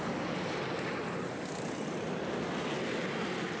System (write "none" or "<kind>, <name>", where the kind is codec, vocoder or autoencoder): none